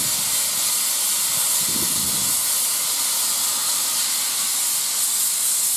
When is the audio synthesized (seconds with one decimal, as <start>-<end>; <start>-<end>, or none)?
3.6-4.2